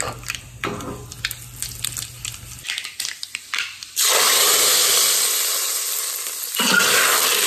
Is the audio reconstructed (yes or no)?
no